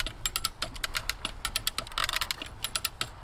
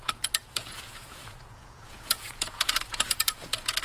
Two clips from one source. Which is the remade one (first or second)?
second